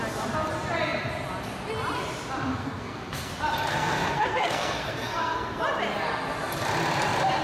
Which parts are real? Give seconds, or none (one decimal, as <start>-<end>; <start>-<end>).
0.0-2.5; 3.3-3.7; 5.6-7.4